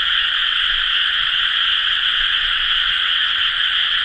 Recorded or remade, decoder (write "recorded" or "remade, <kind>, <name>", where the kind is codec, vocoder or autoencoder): remade, vocoder, WaveNeXt